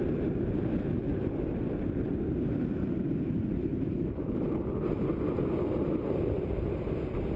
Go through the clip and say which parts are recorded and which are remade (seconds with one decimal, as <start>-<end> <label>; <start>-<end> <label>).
0.0-1.0 remade; 1.0-3.7 recorded; 3.7-5.1 remade; 5.1-7.4 recorded